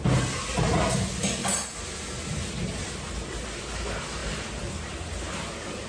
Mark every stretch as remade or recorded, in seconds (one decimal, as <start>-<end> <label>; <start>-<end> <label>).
0.0-5.9 recorded